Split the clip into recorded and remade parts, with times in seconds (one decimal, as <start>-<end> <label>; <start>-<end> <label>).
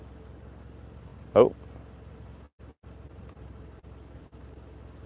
0.0-5.1 recorded